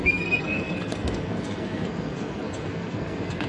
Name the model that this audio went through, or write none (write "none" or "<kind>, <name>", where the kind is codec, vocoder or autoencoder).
codec, SNAC